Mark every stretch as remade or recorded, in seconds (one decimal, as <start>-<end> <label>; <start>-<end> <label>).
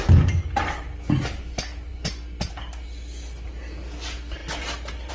0.0-5.1 recorded